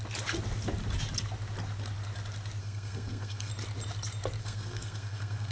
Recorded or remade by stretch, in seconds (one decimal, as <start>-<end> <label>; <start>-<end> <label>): 0.0-2.6 recorded; 2.6-3.5 remade; 3.5-4.4 recorded; 4.4-5.5 remade